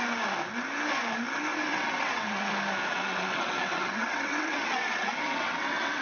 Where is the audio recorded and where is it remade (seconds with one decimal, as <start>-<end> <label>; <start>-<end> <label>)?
0.0-1.5 recorded; 1.5-2.5 remade; 2.5-2.9 recorded; 2.9-6.0 remade